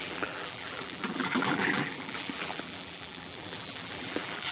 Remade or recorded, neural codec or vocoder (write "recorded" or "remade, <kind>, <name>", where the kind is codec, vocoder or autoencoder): remade, vocoder, BigVGAN v2